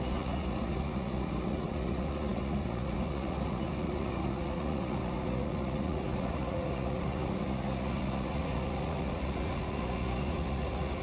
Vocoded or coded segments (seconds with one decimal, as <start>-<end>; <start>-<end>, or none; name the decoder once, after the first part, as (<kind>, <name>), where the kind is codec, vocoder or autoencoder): 0.0-11.0 (vocoder, Vocos)